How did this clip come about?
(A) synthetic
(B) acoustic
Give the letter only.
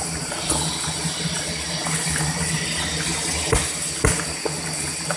B